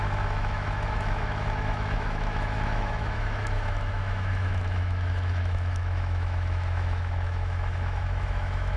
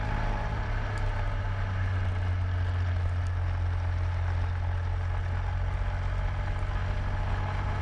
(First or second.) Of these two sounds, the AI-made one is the first